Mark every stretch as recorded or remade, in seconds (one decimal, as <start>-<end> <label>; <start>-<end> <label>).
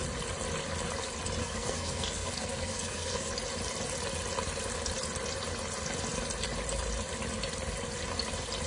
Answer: 0.0-1.4 recorded; 1.4-3.3 remade; 3.3-8.7 recorded